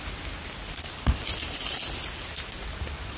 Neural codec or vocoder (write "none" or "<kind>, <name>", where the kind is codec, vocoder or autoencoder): none